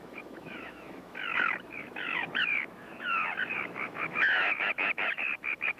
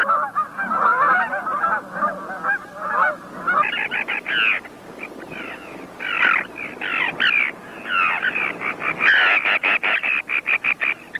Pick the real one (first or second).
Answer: second